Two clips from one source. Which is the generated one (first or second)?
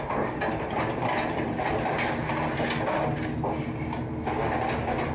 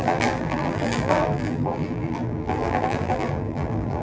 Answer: second